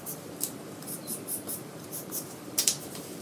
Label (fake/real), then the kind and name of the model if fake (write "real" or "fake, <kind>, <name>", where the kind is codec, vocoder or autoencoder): fake, vocoder, BigVGAN v2